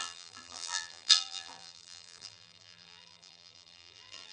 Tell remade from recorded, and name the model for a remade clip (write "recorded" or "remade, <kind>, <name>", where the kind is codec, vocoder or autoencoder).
remade, vocoder, BigVGAN v2